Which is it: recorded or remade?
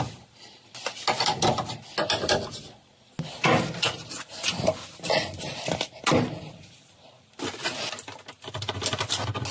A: recorded